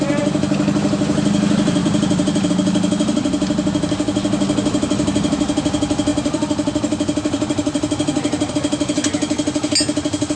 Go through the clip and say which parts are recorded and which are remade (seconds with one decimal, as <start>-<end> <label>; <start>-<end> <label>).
0.0-1.8 recorded; 1.8-2.5 remade; 2.5-6.1 recorded; 6.1-8.5 remade; 8.5-10.4 recorded